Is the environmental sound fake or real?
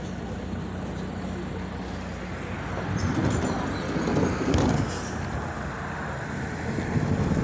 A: real